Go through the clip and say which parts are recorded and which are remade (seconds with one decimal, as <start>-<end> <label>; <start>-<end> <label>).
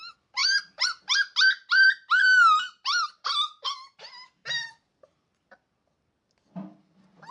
0.0-0.4 recorded; 0.4-3.3 remade; 3.3-7.3 recorded